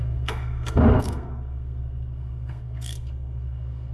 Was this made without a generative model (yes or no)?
no